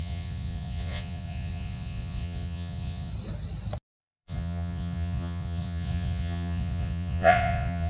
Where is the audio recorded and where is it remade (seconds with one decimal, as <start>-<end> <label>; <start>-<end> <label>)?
0.0-3.1 remade; 3.1-4.0 recorded; 4.0-7.9 remade